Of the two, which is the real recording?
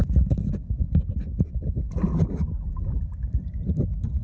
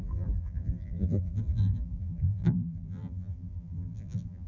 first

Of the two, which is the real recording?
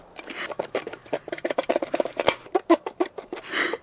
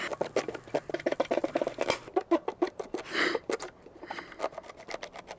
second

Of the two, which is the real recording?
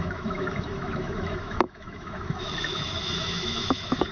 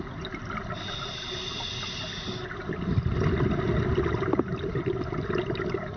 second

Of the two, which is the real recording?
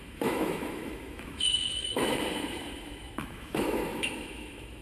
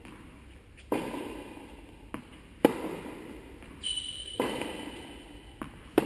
second